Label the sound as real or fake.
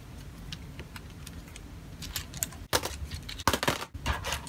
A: real